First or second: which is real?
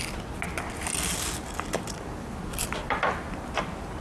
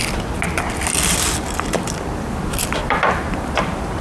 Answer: first